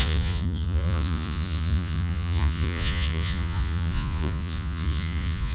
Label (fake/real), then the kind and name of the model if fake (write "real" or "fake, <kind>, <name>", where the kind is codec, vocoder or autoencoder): fake, vocoder, Vocos